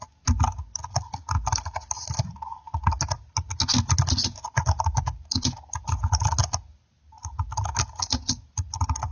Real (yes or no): yes